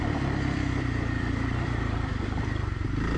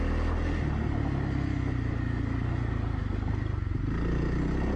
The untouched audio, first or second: second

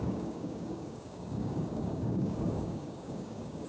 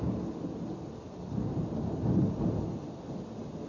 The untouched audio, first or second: second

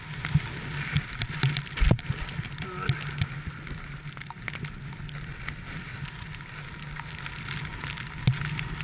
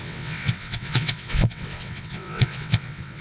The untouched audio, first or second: first